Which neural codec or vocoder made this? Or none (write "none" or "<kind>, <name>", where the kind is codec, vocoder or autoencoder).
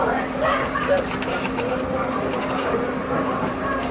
vocoder, BigVGAN v2